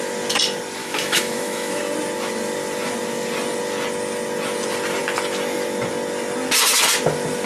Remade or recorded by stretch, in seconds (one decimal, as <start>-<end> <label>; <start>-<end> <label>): 0.0-0.8 recorded; 0.8-1.8 remade; 1.8-7.5 recorded